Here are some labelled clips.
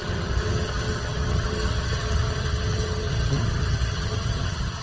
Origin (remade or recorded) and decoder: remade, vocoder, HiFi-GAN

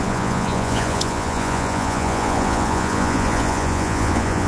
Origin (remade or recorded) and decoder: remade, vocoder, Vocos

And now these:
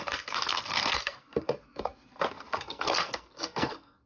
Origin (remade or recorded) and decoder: remade, codec, SNAC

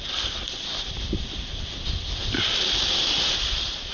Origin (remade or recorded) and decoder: remade, vocoder, BigVGAN v2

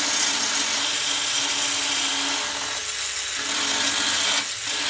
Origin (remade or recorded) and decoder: recorded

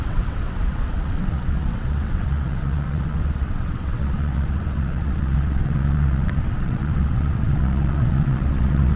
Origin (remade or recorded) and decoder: remade, vocoder, WaveNeXt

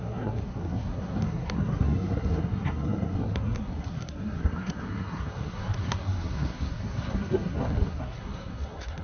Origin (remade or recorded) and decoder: remade, codec, SNAC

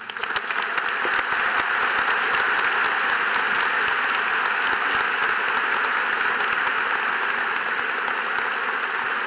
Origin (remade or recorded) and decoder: recorded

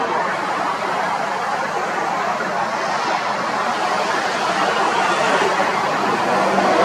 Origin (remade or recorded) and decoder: recorded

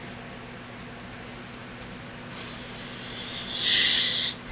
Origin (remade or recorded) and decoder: recorded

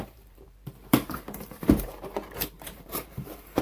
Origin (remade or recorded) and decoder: remade, vocoder, BigVGAN v2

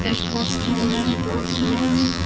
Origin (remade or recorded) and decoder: remade, vocoder, BigVGAN v2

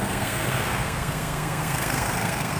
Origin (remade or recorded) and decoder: remade, codec, SNAC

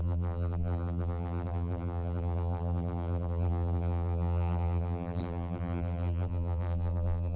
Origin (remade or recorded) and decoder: remade, vocoder, BigVGAN v2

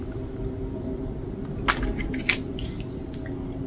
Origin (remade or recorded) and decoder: recorded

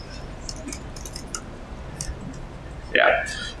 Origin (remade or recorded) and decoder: recorded